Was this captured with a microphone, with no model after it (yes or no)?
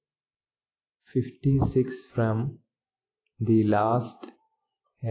no